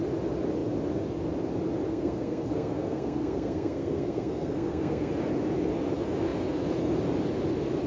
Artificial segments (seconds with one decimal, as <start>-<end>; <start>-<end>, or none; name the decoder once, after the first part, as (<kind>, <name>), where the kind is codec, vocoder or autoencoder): 1.9-5.1 (codec, SNAC)